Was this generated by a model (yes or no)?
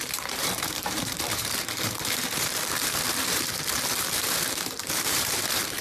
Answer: yes